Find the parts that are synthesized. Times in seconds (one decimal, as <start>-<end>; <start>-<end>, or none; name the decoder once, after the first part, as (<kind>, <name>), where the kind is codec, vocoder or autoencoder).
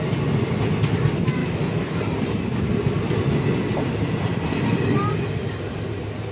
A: 1.4-2.0 (autoencoder, DAC-VAE)